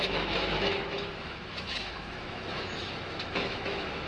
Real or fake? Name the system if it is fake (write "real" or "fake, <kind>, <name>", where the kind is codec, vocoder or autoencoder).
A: fake, autoencoder, DAC-VAE